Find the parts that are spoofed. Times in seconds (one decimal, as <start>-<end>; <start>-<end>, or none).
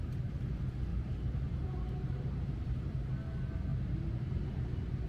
0.9-3.1; 3.7-5.1